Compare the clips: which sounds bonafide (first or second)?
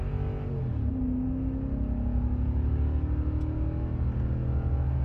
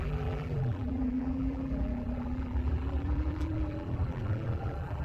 first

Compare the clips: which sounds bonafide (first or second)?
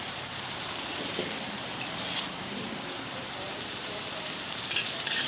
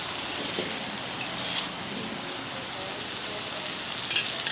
second